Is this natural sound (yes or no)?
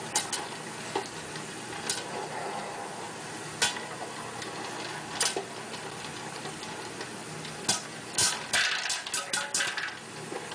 yes